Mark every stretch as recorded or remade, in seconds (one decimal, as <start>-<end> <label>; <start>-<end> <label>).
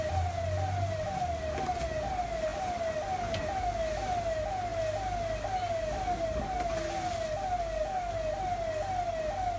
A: 0.0-9.6 recorded